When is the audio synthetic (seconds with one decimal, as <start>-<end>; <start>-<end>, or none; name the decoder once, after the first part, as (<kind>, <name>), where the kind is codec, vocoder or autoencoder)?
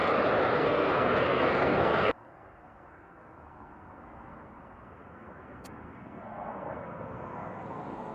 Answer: 0.5-8.1 (codec, SNAC)